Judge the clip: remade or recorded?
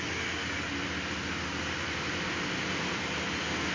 recorded